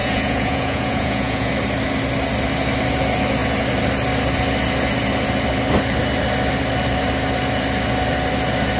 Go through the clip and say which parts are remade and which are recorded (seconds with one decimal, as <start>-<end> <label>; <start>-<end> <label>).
0.0-1.5 remade; 1.5-8.8 recorded